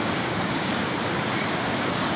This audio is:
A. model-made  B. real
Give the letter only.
A